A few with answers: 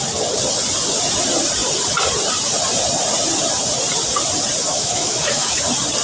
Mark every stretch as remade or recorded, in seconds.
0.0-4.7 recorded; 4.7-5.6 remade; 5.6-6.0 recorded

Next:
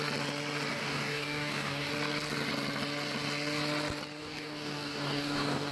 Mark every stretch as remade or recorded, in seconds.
0.0-0.7 recorded; 0.7-1.9 remade; 1.9-4.2 recorded; 4.2-5.7 remade